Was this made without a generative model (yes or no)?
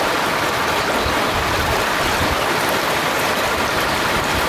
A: no